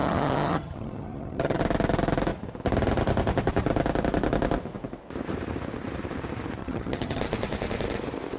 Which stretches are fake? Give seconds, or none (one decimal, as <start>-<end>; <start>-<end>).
0.0-1.6; 6.6-7.2